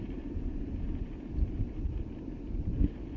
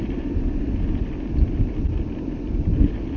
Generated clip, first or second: first